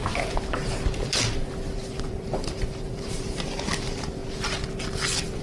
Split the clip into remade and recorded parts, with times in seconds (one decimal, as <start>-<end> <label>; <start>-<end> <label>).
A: 0.0-2.1 recorded; 2.1-4.2 remade; 4.2-5.4 recorded

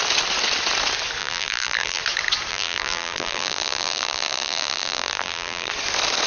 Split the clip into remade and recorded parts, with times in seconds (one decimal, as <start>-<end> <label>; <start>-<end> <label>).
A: 0.0-1.2 recorded; 1.2-2.0 remade; 2.0-2.5 recorded; 2.5-5.7 remade; 5.7-6.3 recorded

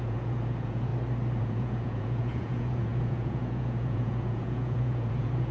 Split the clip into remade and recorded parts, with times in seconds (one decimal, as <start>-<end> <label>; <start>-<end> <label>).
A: 0.0-0.9 remade; 0.9-1.4 recorded; 1.4-5.5 remade

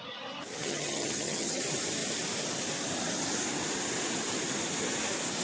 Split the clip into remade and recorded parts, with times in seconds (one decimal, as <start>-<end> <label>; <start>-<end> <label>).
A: 0.0-0.6 recorded; 0.6-1.6 remade; 1.6-5.4 recorded

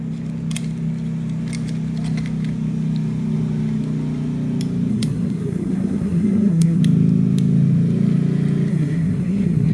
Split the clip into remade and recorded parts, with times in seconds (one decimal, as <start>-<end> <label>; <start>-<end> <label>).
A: 0.0-4.9 recorded; 4.9-6.8 remade; 6.8-8.7 recorded; 8.7-9.7 remade

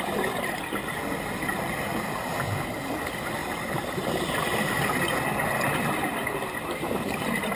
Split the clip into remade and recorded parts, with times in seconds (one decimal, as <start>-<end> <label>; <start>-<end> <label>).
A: 0.0-7.6 recorded